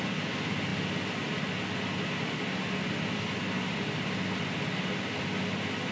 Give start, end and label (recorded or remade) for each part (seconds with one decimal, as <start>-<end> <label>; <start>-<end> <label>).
0.0-5.9 recorded

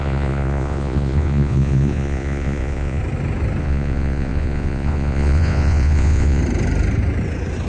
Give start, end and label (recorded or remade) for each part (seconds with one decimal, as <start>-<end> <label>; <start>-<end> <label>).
0.0-3.0 remade; 3.0-3.6 recorded; 3.6-6.4 remade; 6.4-7.7 recorded

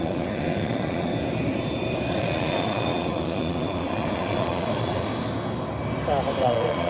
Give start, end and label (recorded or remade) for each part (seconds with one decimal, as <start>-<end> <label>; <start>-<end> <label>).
0.0-1.1 remade; 1.1-2.1 recorded; 2.1-5.1 remade; 5.1-6.4 recorded; 6.4-6.9 remade

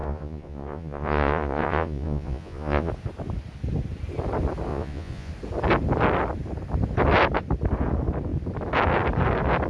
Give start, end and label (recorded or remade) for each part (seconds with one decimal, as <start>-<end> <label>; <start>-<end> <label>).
0.0-2.9 remade; 2.9-4.7 recorded; 4.7-5.3 remade; 5.3-9.7 recorded

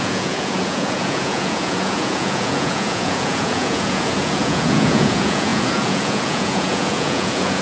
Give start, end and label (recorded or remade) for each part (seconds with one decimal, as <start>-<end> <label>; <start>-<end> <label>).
0.0-7.6 remade

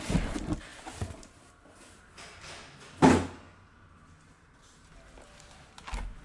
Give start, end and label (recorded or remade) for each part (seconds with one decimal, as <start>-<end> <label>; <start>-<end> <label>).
0.0-6.2 recorded